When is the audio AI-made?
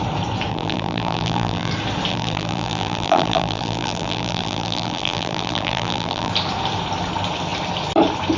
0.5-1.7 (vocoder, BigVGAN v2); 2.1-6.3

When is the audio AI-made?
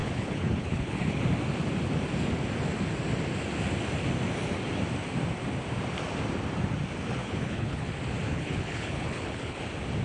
0.0-1.2 (codec, HILCodec); 7.2-7.9; 8.3-9.6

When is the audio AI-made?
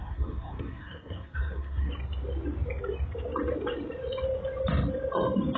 0.0-1.9 (codec, SNAC)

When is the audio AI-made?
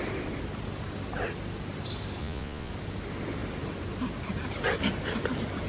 2.2-2.7 (vocoder, Vocos)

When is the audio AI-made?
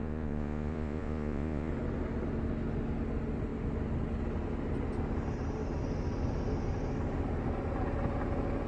0.0-1.7 (vocoder, Vocos)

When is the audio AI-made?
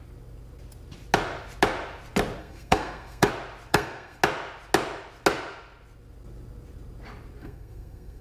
2.4-3.3 (codec, SNAC); 3.7-4.2; 7.4-8.2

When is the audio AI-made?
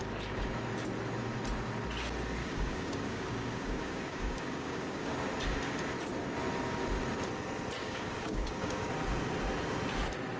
2.4-5.1 (codec, DAC); 7.8-8.9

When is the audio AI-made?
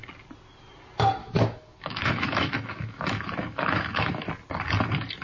1.2-4.3 (autoencoder, DAC-VAE)